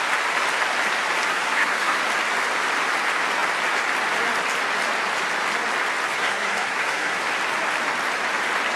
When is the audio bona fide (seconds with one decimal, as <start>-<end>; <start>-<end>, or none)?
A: 0.0-1.3; 2.0-6.1; 7.2-8.8